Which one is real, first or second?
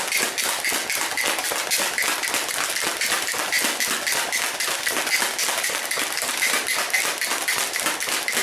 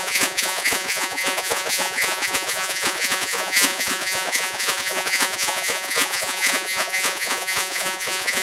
first